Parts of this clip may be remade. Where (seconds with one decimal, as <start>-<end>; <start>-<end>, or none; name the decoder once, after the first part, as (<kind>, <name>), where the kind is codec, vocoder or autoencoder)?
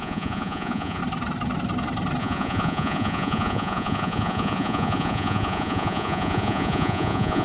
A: 0.0-1.0 (vocoder, Vocos); 2.2-7.4